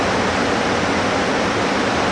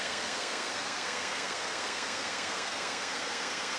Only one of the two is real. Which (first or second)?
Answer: first